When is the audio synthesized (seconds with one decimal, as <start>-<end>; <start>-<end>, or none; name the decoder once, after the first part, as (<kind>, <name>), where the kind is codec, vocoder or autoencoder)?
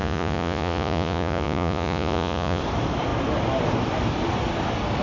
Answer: 0.0-2.6 (vocoder, Vocos)